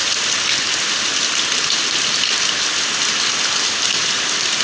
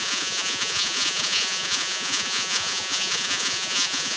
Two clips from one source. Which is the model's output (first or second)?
second